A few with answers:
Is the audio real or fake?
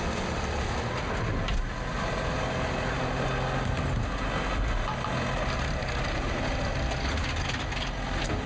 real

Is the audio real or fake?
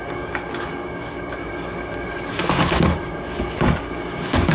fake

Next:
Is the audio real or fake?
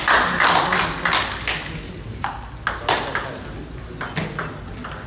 real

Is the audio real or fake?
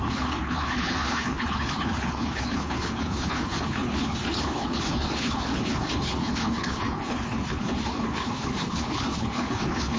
fake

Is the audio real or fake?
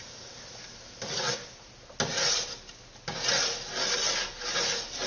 real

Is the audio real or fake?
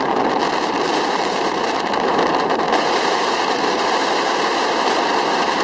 fake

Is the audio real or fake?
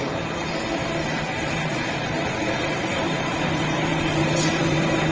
fake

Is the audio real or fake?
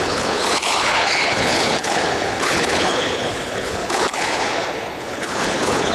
fake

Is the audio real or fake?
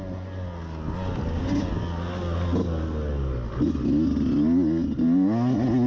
real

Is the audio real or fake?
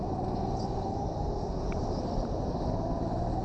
real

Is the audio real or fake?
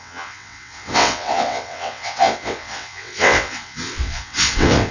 fake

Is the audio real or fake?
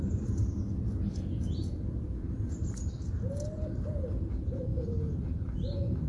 real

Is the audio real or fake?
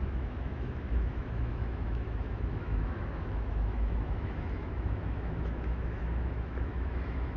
fake